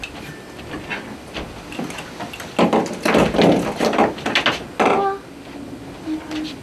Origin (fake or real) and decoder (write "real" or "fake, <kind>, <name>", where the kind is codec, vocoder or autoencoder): real